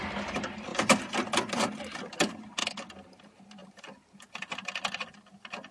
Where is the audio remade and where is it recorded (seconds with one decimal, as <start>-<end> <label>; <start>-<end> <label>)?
0.0-5.7 recorded